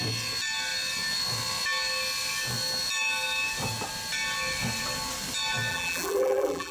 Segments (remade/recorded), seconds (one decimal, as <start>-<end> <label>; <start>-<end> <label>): 0.0-5.7 recorded; 5.7-6.7 remade